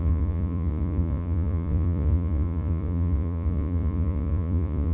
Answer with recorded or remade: remade